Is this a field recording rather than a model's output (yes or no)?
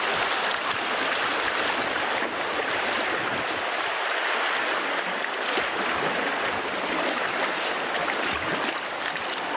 yes